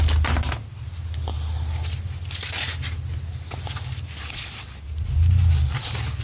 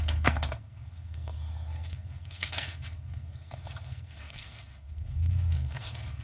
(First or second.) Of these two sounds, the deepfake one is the second